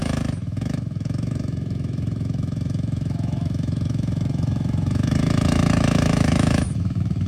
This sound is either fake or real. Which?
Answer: fake